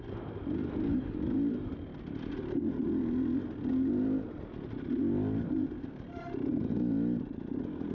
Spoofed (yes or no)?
no